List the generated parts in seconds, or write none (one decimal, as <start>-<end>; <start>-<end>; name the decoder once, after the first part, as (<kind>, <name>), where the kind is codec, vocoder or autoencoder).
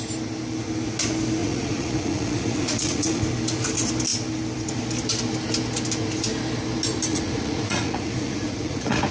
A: 1.4-3.2 (vocoder, Vocos); 7.1-9.1